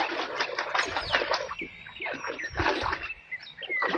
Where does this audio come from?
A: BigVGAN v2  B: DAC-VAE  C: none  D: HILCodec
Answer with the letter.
C